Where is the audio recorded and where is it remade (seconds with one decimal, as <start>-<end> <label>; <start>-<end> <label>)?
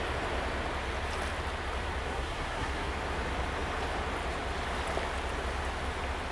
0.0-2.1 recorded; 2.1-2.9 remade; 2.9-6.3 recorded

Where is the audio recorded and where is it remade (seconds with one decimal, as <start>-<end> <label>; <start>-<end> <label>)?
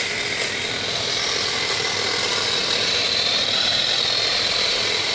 0.0-2.6 recorded; 2.6-3.9 remade; 3.9-4.3 recorded; 4.3-5.1 remade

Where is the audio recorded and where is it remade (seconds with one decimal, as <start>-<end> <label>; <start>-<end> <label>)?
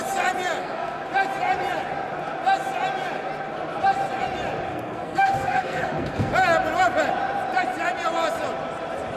0.0-0.6 recorded; 0.6-1.1 remade; 1.1-4.7 recorded; 4.7-6.3 remade; 6.3-9.2 recorded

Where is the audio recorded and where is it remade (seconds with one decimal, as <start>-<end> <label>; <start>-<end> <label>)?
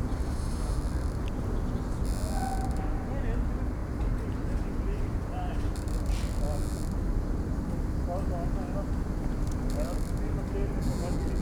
0.0-3.8 recorded; 3.8-5.7 remade; 5.7-7.1 recorded; 7.1-8.0 remade; 8.0-11.4 recorded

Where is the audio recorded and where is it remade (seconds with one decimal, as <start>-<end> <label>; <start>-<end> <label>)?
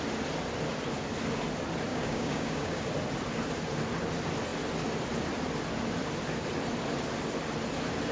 0.0-1.9 recorded; 1.9-2.8 remade; 2.8-8.1 recorded